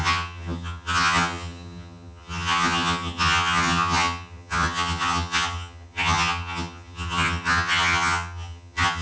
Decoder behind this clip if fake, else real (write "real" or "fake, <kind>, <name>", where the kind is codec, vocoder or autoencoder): fake, vocoder, HiFi-GAN